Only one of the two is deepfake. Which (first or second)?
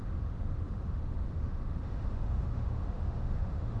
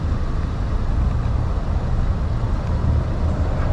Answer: first